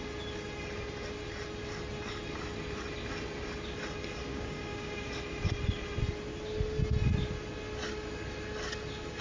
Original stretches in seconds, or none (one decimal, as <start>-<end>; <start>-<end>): 0.0-4.3; 5.1-9.2